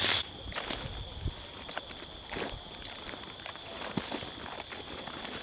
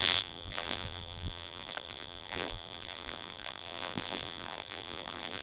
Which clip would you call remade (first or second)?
second